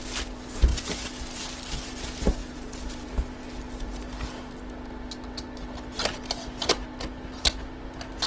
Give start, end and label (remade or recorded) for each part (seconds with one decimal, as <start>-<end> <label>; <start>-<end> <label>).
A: 0.0-8.3 recorded